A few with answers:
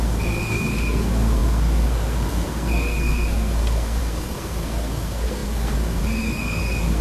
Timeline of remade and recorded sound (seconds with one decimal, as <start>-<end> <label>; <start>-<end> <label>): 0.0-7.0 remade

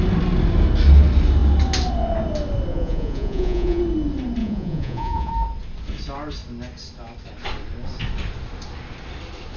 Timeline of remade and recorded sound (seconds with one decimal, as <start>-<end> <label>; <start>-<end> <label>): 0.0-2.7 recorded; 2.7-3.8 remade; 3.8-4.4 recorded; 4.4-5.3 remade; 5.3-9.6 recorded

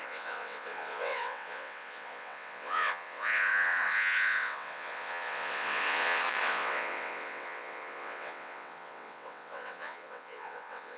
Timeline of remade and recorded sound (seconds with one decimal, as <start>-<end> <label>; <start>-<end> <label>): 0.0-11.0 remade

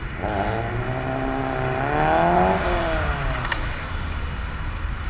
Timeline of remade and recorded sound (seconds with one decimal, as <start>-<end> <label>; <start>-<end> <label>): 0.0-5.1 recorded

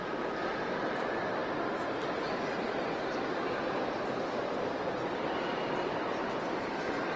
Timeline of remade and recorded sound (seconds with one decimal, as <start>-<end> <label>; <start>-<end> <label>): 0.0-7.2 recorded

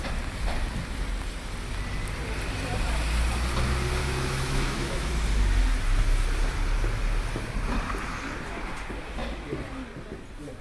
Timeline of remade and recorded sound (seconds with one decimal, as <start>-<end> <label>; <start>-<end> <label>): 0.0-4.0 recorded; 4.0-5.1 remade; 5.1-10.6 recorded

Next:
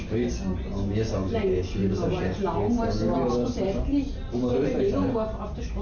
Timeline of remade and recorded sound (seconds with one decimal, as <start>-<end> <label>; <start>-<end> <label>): 0.0-5.8 recorded